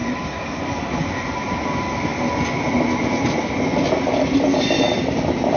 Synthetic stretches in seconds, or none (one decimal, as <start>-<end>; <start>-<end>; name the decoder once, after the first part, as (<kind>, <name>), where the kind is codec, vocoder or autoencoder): none